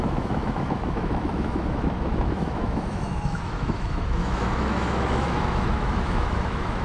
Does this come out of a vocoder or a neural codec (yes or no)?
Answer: yes